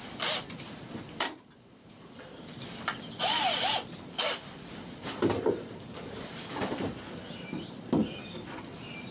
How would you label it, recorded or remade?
remade